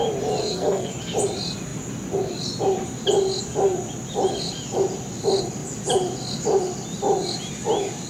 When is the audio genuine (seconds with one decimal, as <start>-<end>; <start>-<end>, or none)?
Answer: 0.0-0.4; 0.9-8.1